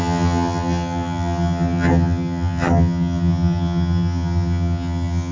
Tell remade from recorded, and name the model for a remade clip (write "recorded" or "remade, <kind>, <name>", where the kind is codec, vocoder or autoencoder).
remade, vocoder, HiFi-GAN